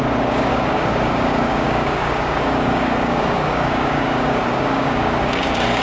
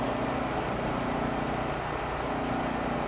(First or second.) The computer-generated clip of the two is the first